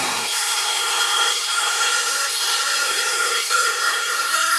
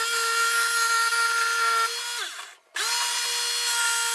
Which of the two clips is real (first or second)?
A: second